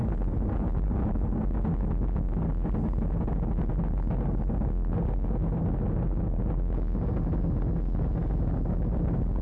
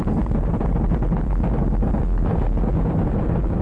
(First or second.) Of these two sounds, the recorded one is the first